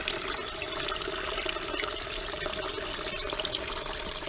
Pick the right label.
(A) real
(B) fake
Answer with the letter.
A